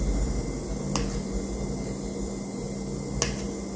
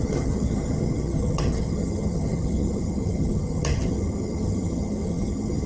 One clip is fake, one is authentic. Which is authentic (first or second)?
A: first